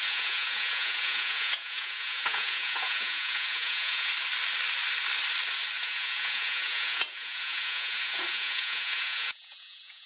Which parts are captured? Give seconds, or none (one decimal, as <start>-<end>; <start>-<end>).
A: 4.1-5.8